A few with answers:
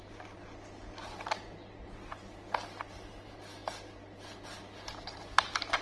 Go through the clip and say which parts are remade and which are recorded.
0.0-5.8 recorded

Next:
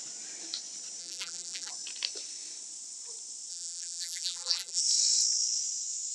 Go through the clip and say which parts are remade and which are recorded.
0.0-1.0 recorded; 1.0-1.7 remade; 1.7-3.5 recorded; 3.5-4.8 remade; 4.8-6.1 recorded

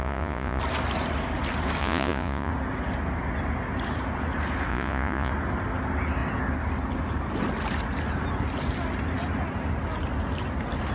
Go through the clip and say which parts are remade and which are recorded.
0.0-0.6 remade; 0.6-1.8 recorded; 1.8-2.5 remade; 2.5-4.7 recorded; 4.7-5.3 remade; 5.3-10.9 recorded

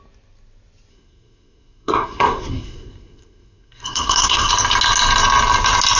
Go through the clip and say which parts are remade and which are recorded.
0.0-0.9 recorded; 0.9-4.5 remade; 4.5-6.0 recorded